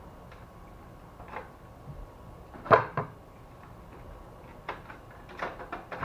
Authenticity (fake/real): fake